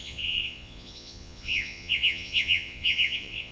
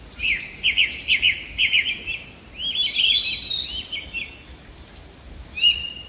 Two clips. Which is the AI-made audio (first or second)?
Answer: first